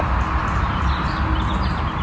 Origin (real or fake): real